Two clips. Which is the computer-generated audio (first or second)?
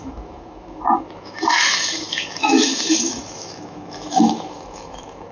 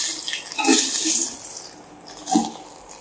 first